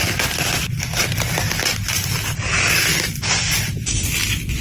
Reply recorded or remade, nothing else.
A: recorded